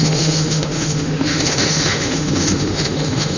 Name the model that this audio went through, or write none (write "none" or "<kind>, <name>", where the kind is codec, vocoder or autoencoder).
autoencoder, DAC-VAE